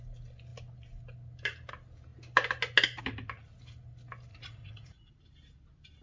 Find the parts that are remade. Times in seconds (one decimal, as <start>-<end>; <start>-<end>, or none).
4.3-5.1